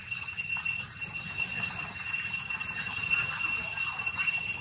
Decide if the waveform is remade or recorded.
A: remade